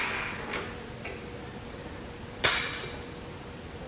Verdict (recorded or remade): recorded